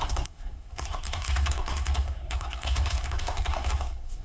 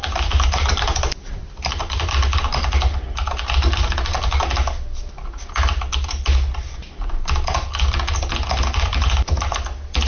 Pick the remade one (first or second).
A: first